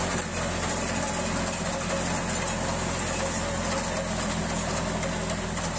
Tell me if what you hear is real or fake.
real